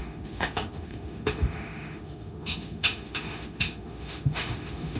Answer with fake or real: fake